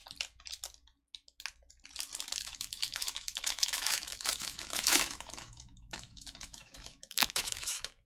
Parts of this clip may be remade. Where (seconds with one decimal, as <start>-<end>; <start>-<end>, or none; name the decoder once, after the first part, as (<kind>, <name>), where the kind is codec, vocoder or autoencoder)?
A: 2.4-8.1 (autoencoder, DAC-VAE)